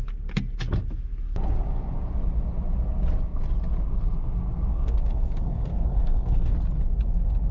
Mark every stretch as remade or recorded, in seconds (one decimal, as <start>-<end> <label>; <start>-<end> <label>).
0.0-4.7 recorded; 4.7-6.5 remade; 6.5-7.5 recorded